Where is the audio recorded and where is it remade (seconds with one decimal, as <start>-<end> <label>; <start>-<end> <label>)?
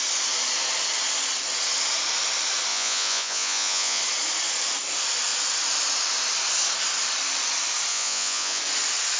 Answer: 0.0-2.7 recorded; 2.7-4.0 remade; 4.0-7.9 recorded; 7.9-8.6 remade; 8.6-9.2 recorded